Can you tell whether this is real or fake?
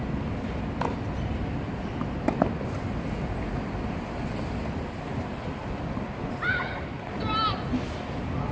real